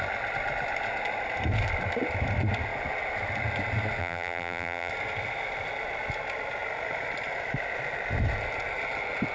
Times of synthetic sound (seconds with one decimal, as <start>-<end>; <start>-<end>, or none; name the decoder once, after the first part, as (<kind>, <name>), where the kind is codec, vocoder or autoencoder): 4.0-4.9 (vocoder, BigVGAN v2)